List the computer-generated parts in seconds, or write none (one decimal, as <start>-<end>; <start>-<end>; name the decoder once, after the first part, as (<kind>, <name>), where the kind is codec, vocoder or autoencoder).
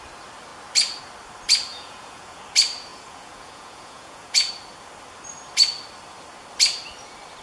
1.7-2.4 (vocoder, Vocos); 2.9-4.5